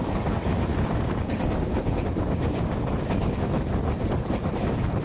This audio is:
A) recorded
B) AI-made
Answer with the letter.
A